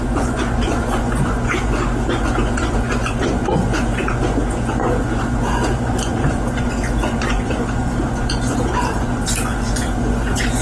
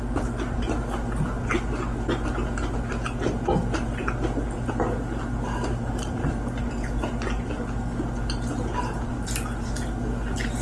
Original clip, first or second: second